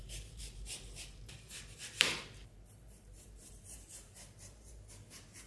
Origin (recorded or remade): remade